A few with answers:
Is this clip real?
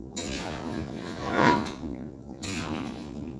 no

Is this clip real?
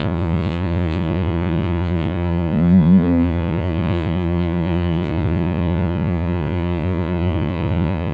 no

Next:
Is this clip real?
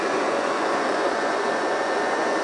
no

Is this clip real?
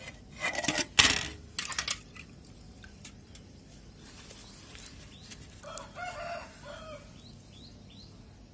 yes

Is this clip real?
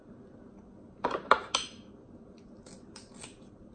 yes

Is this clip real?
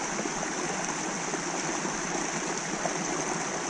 yes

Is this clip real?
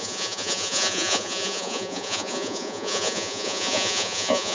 no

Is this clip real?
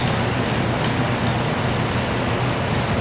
yes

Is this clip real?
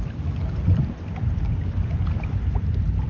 yes